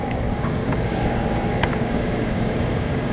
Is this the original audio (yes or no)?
no